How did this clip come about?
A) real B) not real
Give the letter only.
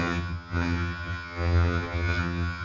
B